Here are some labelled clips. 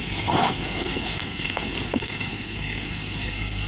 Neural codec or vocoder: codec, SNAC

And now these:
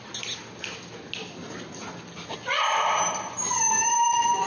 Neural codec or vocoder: none